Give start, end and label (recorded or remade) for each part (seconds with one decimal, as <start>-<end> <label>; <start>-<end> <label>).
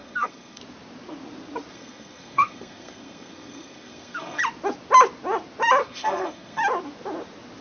0.0-0.6 remade; 0.6-1.7 recorded; 1.7-4.4 remade; 4.4-5.8 recorded; 5.8-6.6 remade; 6.6-7.6 recorded